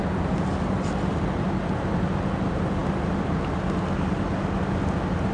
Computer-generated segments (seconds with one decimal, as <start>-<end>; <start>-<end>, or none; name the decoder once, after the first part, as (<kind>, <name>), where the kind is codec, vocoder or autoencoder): none